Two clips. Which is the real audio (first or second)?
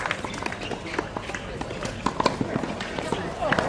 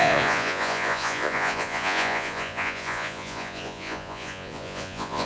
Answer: first